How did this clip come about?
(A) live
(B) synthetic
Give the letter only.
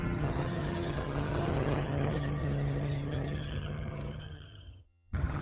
B